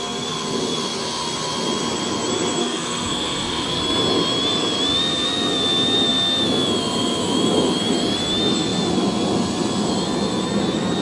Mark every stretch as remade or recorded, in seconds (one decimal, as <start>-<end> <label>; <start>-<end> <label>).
0.0-2.6 recorded; 2.6-3.8 remade; 3.8-11.0 recorded